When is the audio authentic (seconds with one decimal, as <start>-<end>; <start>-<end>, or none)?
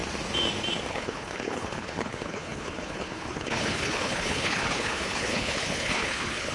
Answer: 0.0-0.9